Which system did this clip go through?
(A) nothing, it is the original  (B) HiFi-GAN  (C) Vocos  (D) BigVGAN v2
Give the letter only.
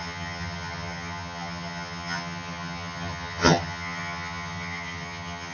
B